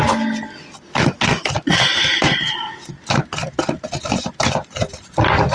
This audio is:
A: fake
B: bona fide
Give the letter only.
B